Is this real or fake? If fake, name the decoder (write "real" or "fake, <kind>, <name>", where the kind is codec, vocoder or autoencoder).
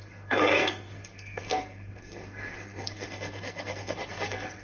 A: fake, codec, SNAC